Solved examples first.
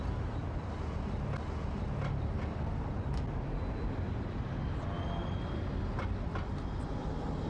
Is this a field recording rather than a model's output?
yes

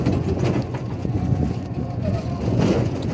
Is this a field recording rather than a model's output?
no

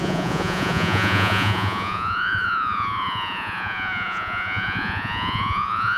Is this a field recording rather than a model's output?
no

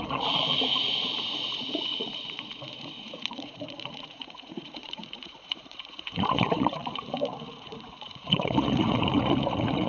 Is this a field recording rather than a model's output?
no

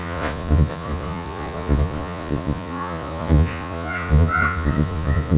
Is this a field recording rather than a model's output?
no